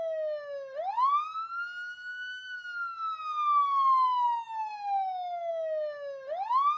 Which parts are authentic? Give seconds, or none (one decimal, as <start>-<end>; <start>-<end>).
0.0-6.8